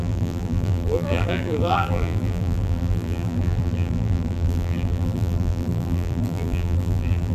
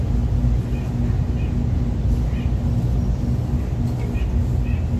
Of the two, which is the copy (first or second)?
first